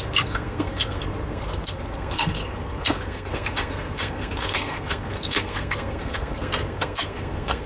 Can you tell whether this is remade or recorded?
remade